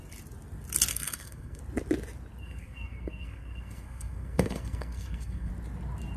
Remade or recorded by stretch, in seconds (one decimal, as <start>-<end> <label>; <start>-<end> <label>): 0.0-0.9 recorded; 0.9-1.6 remade; 1.6-2.4 recorded; 2.4-5.5 remade; 5.5-6.2 recorded